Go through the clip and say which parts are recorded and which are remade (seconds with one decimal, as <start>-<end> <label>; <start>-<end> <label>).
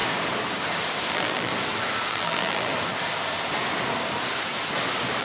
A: 0.0-1.1 recorded; 1.1-1.5 remade; 1.5-2.1 recorded; 2.1-2.7 remade; 2.7-5.2 recorded